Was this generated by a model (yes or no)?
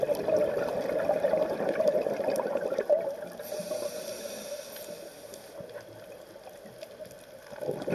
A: no